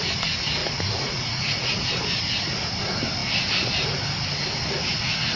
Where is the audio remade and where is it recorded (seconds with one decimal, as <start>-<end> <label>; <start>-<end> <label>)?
0.0-0.6 recorded; 0.6-1.8 remade; 1.8-5.4 recorded